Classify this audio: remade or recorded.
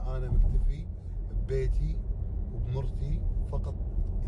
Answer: recorded